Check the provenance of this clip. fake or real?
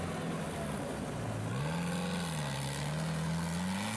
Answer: real